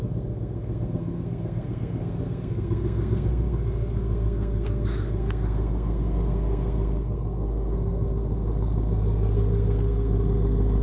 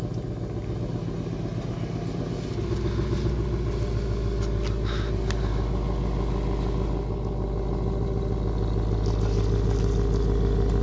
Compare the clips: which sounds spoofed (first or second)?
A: first